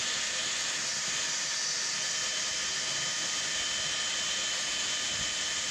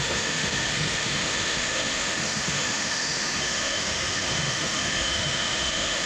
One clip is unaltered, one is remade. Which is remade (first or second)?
second